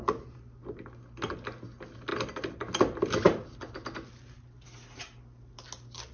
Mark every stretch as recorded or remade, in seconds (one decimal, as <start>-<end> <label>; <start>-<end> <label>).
0.0-6.1 recorded